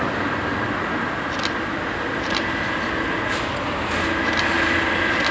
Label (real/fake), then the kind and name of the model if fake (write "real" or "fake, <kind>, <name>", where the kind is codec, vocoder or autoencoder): real